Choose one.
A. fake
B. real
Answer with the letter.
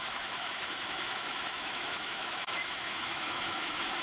A